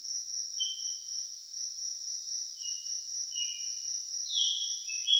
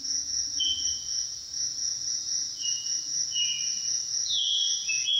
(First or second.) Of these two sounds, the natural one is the first